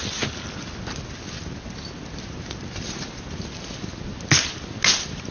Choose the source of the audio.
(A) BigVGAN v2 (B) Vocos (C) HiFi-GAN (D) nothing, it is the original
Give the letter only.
D